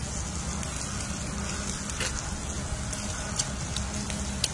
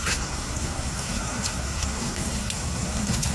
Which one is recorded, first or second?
first